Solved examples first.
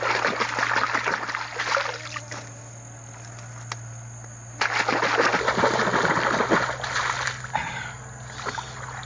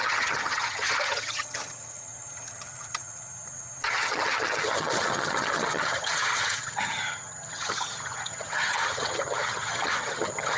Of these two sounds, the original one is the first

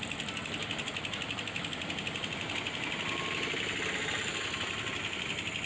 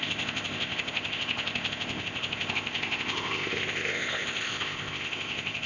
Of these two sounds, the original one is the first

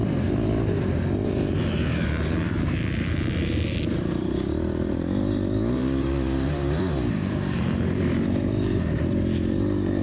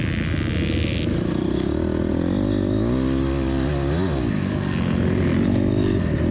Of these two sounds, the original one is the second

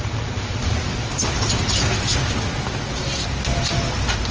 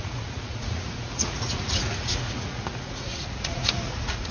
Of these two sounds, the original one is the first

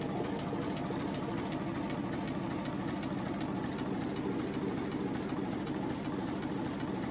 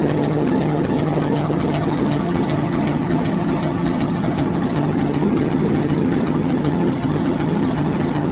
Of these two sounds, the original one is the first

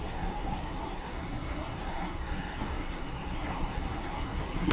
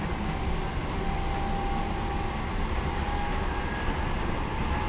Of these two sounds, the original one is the second